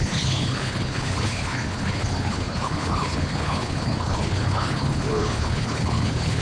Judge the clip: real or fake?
fake